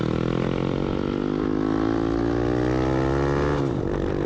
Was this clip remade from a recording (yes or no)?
no